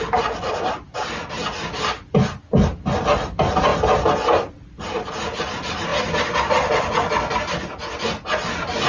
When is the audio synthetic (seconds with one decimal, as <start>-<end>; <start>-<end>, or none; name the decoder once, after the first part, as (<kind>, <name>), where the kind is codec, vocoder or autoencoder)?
none